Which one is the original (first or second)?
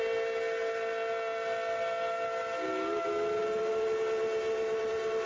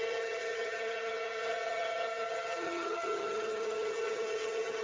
first